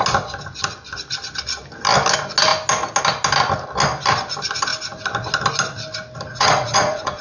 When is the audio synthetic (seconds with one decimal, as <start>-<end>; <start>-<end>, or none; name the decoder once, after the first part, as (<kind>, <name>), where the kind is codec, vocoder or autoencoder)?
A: 6.3-7.2 (vocoder, Vocos)